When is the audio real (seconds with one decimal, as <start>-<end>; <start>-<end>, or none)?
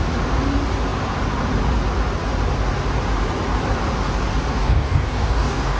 0.0-4.5